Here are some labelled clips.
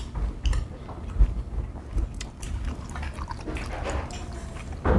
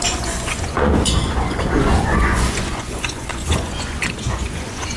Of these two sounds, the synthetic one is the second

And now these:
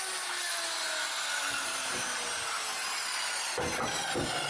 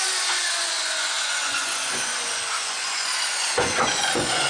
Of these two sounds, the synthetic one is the second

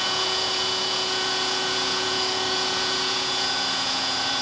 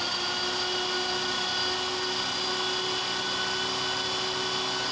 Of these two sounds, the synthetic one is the first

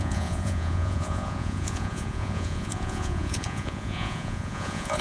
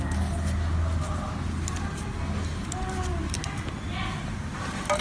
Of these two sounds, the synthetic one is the first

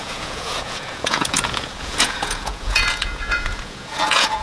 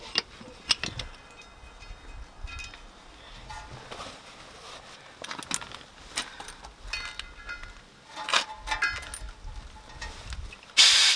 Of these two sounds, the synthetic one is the first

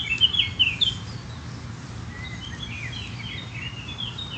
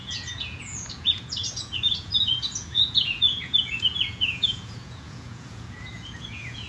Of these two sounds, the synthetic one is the second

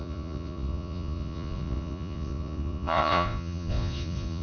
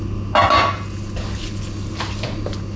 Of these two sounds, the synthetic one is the first